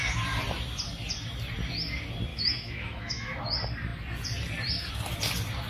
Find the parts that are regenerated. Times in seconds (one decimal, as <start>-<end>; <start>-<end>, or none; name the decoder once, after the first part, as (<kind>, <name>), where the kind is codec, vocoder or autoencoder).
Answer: 2.3-3.4 (autoencoder, DAC-VAE)